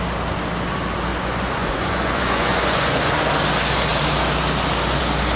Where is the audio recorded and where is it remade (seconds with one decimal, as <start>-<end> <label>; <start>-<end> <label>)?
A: 0.0-1.1 recorded; 1.1-3.2 remade; 3.2-5.4 recorded